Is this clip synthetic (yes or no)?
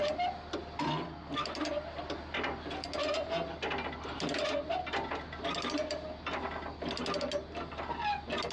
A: no